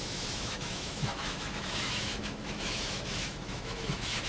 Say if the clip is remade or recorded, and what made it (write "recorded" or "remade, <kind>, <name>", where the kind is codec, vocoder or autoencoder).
remade, autoencoder, DAC-VAE